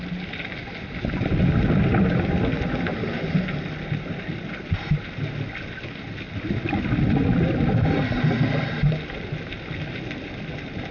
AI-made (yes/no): no